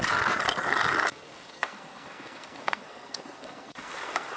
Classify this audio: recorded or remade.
remade